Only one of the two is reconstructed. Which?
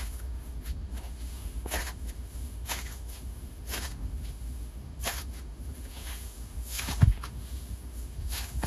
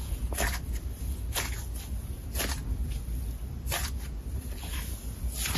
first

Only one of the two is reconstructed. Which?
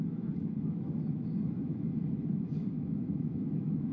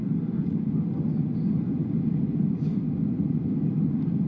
first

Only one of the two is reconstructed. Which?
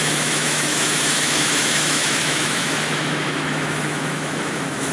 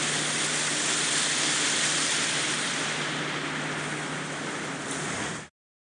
first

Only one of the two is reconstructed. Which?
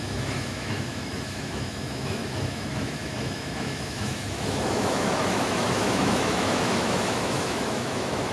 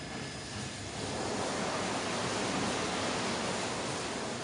first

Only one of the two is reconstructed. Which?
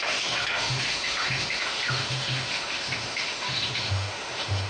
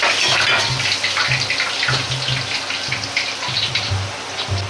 first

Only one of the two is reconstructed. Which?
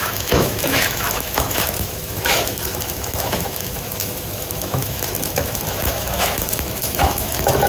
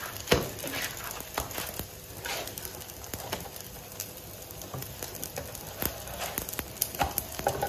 first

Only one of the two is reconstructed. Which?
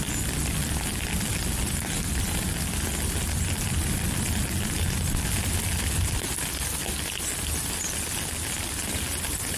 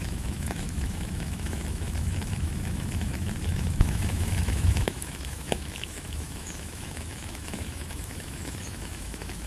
second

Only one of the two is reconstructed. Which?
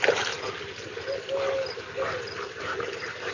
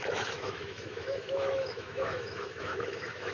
second